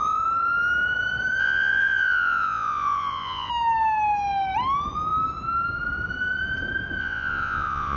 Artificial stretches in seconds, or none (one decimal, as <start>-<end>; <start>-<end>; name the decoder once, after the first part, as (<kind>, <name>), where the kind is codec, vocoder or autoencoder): 1.4-3.5 (vocoder, Vocos); 7.0-8.0